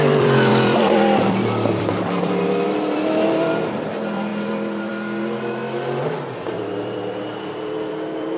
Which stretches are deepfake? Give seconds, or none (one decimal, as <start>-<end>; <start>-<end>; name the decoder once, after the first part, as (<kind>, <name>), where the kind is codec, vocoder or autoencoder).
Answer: 0.0-5.6 (vocoder, BigVGAN v2); 6.7-8.4